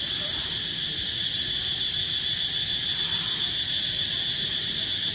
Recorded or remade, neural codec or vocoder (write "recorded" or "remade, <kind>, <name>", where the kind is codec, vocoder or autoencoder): recorded